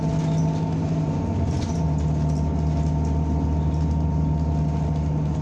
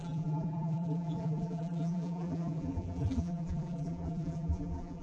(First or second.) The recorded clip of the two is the first